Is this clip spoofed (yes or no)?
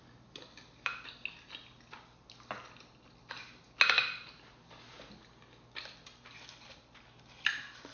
no